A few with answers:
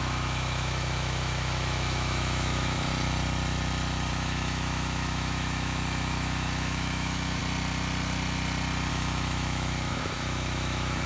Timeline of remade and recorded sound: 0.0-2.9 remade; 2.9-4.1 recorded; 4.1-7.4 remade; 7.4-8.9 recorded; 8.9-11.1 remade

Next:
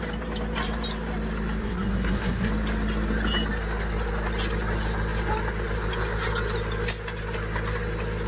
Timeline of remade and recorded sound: 0.0-1.6 recorded; 1.6-2.5 remade; 2.5-8.3 recorded

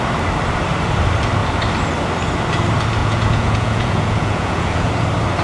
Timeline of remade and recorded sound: 0.0-3.0 recorded; 3.0-4.9 remade; 4.9-5.4 recorded

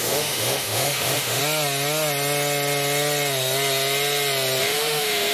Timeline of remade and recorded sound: 0.0-1.4 remade; 1.4-4.6 recorded; 4.6-5.3 remade

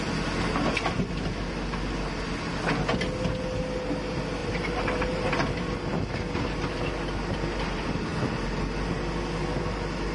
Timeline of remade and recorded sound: 0.0-4.4 recorded; 4.4-5.3 remade; 5.3-10.1 recorded

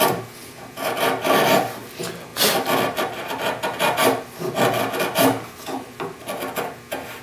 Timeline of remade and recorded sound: 0.0-7.2 recorded